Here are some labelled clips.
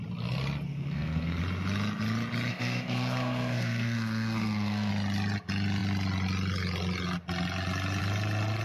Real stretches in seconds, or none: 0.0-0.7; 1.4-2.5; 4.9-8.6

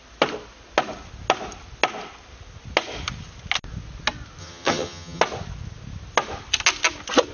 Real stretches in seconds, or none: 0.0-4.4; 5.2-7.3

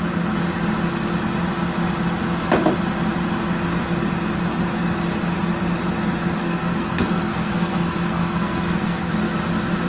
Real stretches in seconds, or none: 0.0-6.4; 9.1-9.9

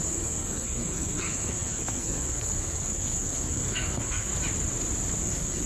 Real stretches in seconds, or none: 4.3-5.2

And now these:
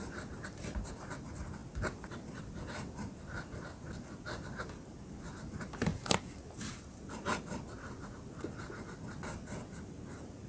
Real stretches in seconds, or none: 0.0-10.5

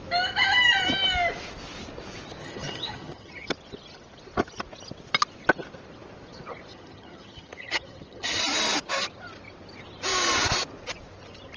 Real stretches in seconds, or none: 0.0-2.4; 3.5-6.7; 8.4-11.6